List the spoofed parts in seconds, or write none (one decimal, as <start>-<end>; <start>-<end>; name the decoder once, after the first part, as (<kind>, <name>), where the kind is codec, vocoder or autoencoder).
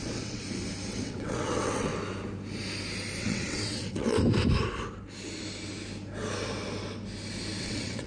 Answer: 0.0-0.4 (vocoder, WaveNeXt); 0.9-1.9; 3.2-4.2; 7.6-8.1